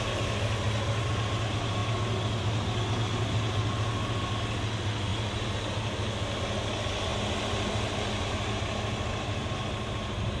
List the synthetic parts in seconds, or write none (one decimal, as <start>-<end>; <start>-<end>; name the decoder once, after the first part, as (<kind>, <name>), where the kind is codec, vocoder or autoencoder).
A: none